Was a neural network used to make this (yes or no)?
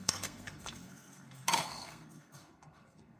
yes